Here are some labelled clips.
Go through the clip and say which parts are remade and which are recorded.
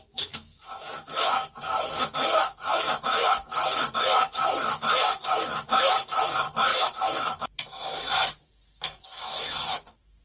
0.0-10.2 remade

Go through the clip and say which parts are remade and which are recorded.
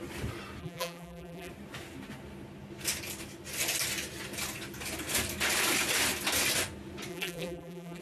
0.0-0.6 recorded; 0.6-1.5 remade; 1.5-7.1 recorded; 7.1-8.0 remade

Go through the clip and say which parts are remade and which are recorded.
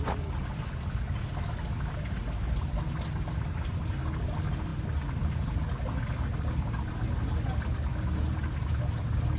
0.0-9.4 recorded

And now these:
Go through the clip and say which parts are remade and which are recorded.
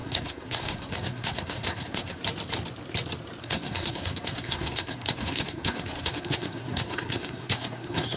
0.0-2.2 remade; 2.2-3.4 recorded; 3.4-8.2 remade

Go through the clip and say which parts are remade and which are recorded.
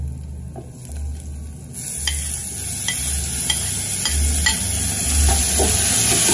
0.0-6.3 recorded